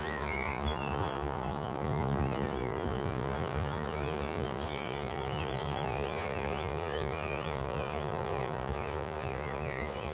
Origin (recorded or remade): remade